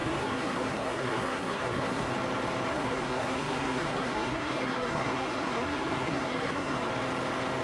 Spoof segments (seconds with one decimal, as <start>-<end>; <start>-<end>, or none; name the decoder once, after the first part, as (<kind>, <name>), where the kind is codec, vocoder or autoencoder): 0.0-2.1 (codec, SNAC); 2.7-6.9

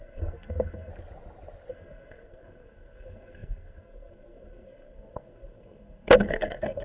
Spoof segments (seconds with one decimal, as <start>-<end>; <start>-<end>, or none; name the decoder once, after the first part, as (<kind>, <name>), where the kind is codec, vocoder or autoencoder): 0.0-0.9 (codec, SNAC); 1.7-6.8

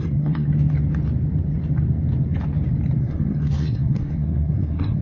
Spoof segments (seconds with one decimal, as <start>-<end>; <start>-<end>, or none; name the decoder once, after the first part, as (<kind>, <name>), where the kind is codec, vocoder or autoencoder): 0.0-0.5 (codec, SNAC); 3.0-5.0

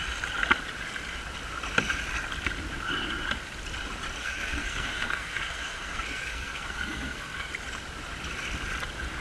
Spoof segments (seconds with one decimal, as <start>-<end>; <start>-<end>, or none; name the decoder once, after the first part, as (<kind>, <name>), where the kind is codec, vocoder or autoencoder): 4.2-7.5 (codec, SNAC)

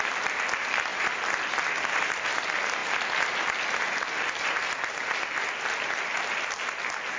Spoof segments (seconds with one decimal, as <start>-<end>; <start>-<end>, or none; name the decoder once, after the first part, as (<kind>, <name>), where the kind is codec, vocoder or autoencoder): none

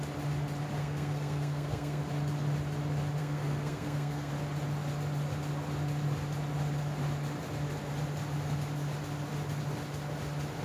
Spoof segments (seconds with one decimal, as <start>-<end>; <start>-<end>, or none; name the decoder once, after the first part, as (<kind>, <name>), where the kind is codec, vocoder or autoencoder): 0.8-2.0 (codec, SNAC); 3.2-4.3

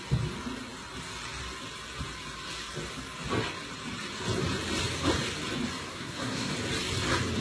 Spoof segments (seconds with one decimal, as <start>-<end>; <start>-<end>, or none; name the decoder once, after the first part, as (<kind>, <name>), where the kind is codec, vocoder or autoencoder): 5.9-6.5 (codec, SNAC)